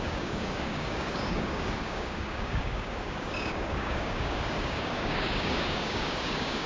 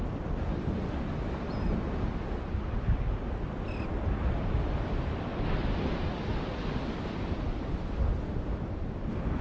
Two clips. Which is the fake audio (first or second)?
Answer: first